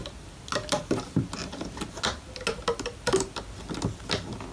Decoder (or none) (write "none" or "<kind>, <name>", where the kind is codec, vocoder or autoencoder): none